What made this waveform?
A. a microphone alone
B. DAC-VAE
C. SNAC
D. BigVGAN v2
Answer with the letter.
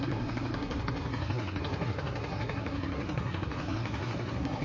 C